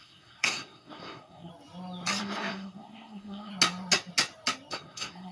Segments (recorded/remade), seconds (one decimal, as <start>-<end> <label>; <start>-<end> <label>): 0.0-1.5 remade; 1.5-2.2 recorded; 2.2-3.5 remade; 3.5-4.7 recorded; 4.7-5.3 remade